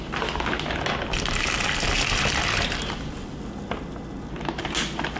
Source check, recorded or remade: recorded